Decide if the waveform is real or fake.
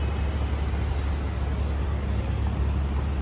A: real